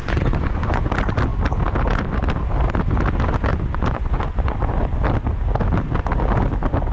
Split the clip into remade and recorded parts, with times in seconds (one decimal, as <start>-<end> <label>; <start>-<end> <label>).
0.0-0.9 remade; 0.9-3.5 recorded; 3.5-4.9 remade; 4.9-6.9 recorded